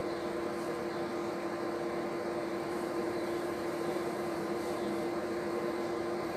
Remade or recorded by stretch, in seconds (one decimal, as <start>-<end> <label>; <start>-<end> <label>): 0.0-2.4 recorded; 2.4-6.4 remade